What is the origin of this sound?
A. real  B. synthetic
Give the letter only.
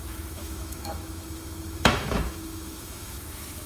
B